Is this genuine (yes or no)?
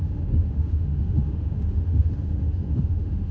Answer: no